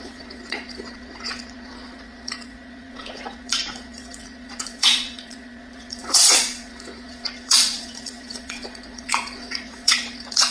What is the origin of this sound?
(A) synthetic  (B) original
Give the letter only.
A